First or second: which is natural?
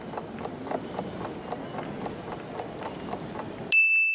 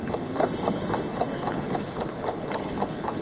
first